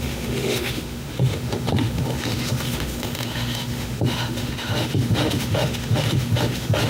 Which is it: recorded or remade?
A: remade